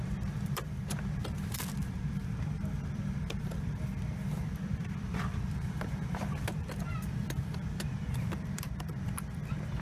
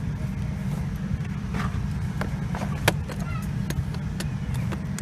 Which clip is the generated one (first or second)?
first